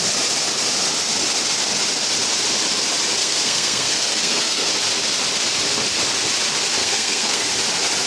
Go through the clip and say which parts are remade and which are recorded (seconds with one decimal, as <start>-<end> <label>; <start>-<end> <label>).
0.0-3.2 recorded; 3.2-4.7 remade; 4.7-6.8 recorded; 6.8-7.5 remade; 7.5-8.1 recorded